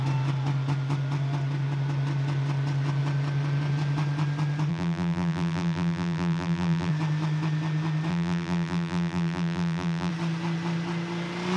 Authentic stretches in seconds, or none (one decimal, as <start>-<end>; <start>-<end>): 0.0-4.7; 6.9-8.1; 10.1-11.6